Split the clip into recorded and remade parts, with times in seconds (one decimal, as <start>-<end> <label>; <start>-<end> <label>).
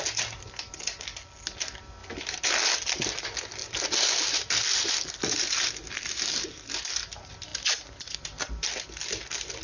0.0-9.6 recorded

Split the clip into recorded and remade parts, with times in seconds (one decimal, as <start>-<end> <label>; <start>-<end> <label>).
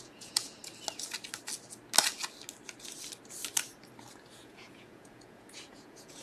0.0-0.6 remade; 0.6-4.3 recorded; 4.3-6.2 remade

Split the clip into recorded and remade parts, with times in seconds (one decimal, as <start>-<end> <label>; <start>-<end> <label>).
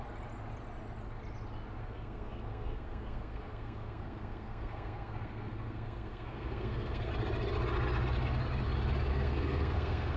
0.0-1.8 recorded; 1.8-7.1 remade; 7.1-9.1 recorded; 9.1-10.2 remade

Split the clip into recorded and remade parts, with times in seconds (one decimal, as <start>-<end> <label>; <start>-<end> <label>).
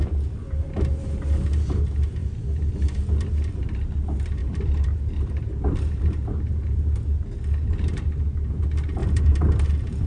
0.0-4.4 recorded; 4.4-6.0 remade; 6.0-9.0 recorded; 9.0-9.7 remade; 9.7-10.1 recorded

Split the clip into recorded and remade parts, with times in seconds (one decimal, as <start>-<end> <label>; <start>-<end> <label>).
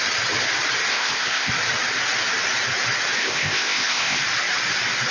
0.0-0.9 recorded; 0.9-1.5 remade; 1.5-3.2 recorded; 3.2-4.2 remade; 4.2-5.1 recorded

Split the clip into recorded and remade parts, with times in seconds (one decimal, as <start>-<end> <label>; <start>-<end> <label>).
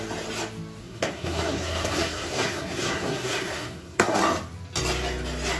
0.0-0.8 recorded; 0.8-4.2 remade; 4.2-5.6 recorded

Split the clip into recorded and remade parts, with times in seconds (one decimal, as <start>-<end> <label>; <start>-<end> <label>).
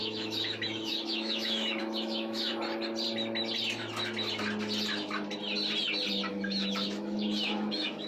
0.0-2.5 remade; 2.5-6.3 recorded; 6.3-8.1 remade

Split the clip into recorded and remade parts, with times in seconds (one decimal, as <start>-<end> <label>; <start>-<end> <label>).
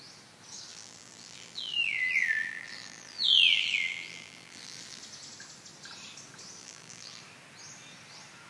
0.0-0.7 recorded; 0.7-5.0 remade; 5.0-6.6 recorded; 6.6-7.2 remade; 7.2-8.5 recorded